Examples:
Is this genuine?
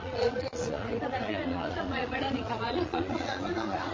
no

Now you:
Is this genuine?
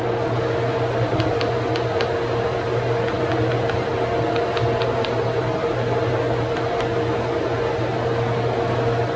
yes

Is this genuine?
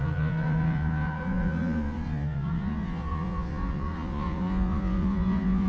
no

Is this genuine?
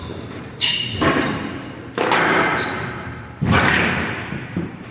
no